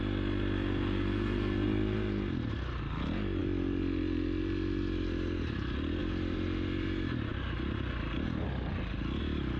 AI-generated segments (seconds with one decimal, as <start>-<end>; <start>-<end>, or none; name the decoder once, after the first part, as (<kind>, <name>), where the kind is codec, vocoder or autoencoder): none